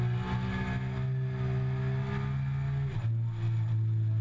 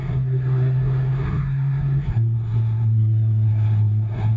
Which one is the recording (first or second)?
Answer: first